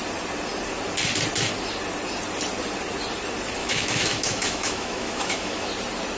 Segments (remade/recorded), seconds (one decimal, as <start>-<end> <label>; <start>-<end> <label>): 0.0-3.6 recorded; 3.6-5.7 remade; 5.7-6.2 recorded